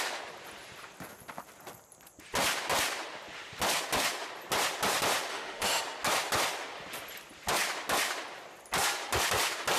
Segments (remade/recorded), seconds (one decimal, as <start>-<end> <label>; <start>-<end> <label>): 0.0-5.3 recorded; 5.3-5.8 remade; 5.8-9.8 recorded